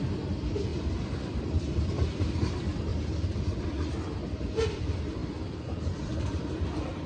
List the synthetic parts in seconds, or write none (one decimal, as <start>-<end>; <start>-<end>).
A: 0.0-0.7; 1.4-2.9; 3.9-7.1